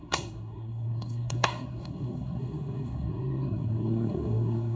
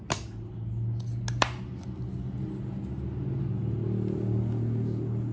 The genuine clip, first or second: second